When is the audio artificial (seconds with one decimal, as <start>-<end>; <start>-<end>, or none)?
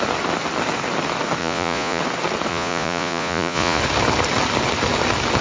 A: 1.4-2.0; 2.5-3.8